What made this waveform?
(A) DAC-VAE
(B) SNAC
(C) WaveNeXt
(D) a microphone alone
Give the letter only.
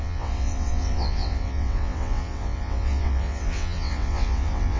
C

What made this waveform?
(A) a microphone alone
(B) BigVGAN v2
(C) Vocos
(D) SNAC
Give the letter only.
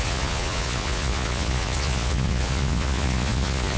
C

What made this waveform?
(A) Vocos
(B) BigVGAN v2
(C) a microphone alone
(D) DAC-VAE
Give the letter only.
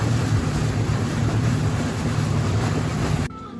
B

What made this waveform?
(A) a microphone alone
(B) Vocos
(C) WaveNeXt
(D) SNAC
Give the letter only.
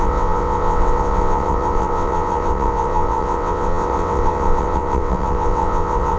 C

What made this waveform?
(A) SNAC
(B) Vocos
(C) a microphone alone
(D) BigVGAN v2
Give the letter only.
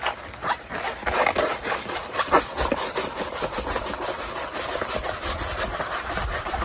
D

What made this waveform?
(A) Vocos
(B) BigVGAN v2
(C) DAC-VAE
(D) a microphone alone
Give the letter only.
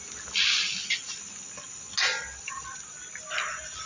D